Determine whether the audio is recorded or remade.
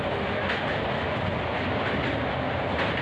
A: recorded